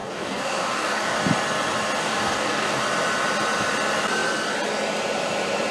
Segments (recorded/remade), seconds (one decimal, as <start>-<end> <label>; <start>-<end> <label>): 0.0-1.2 remade; 1.2-2.0 recorded; 2.0-2.8 remade; 2.8-5.7 recorded